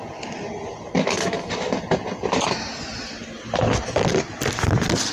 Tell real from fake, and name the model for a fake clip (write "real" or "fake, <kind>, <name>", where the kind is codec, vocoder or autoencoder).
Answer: real